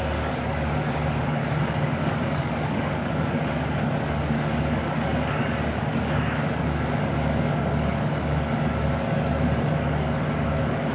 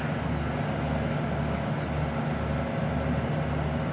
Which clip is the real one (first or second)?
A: second